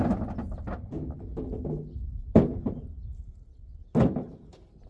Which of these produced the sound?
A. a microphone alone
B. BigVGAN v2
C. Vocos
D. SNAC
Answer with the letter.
A